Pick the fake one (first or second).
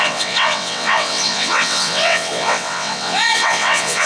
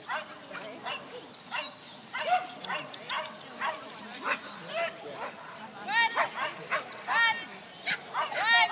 first